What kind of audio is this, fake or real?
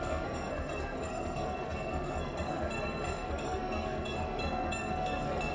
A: fake